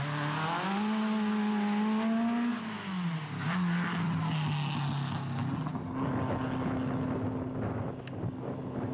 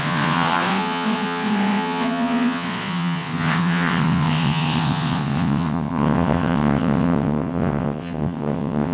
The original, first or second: first